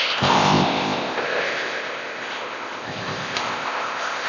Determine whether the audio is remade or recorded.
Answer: remade